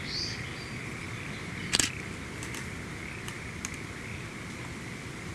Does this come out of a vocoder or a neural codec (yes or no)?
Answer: no